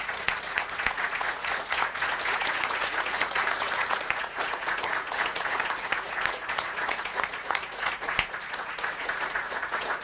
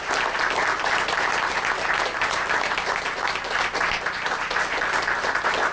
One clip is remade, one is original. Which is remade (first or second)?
first